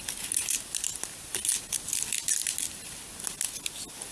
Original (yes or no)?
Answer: yes